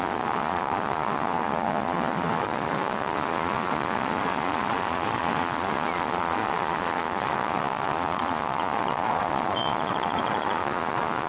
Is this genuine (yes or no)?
no